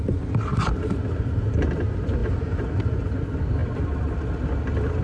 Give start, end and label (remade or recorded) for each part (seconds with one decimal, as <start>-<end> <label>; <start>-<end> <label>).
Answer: 0.0-0.5 recorded; 0.5-1.5 remade; 1.5-2.2 recorded; 2.2-2.8 remade; 2.8-5.0 recorded